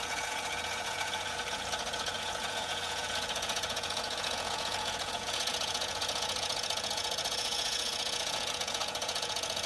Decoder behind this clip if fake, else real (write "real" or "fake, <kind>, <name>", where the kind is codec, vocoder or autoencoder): fake, vocoder, Vocos